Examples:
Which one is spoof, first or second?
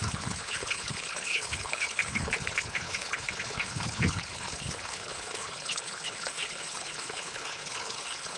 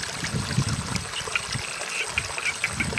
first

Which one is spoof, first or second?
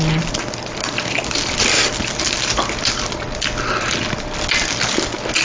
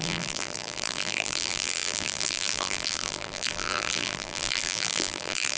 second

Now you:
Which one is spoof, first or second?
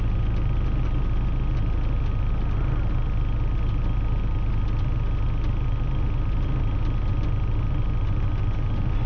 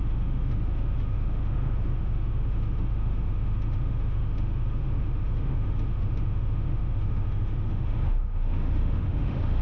second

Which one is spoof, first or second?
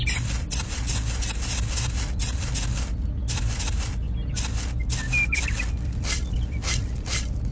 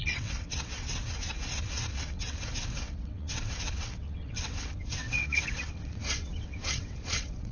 second